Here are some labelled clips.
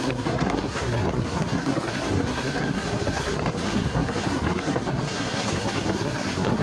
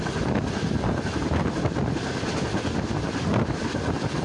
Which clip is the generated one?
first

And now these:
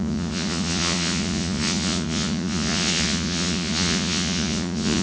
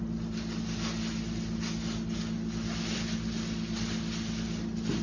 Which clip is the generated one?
first